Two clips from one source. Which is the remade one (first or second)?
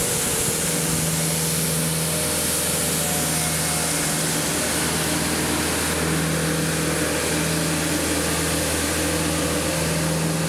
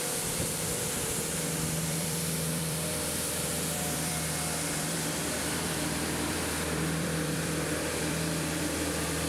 second